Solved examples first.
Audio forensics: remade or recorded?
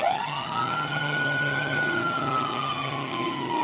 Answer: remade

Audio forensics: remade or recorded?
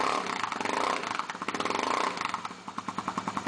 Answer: recorded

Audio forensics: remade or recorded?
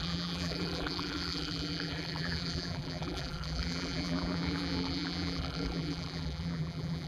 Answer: remade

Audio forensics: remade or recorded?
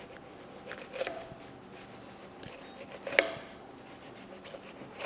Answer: recorded